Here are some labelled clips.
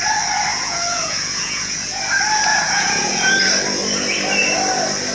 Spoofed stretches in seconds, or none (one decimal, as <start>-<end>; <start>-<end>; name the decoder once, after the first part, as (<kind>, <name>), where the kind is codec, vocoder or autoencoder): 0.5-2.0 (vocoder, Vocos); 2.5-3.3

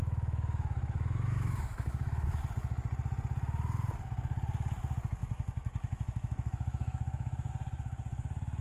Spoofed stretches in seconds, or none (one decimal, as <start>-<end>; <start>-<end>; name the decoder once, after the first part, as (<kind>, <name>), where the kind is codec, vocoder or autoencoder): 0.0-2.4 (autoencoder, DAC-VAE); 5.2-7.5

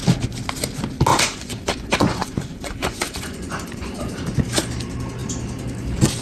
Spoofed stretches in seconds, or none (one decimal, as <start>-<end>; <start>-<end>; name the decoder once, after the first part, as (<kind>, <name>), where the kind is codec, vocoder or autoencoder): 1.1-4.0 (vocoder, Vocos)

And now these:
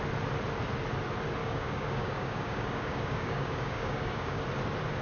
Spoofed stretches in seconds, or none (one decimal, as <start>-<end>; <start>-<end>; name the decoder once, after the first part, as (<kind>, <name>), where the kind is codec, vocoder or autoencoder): 1.4-4.4 (codec, DAC)